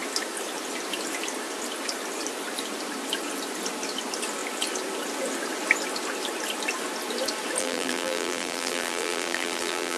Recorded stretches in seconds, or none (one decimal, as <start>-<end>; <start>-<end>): 0.0-7.6